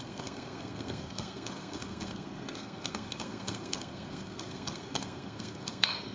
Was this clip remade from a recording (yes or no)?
yes